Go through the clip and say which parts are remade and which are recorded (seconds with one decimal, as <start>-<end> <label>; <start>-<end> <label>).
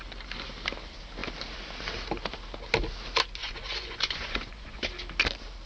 0.0-3.4 recorded; 3.4-4.8 remade; 4.8-5.7 recorded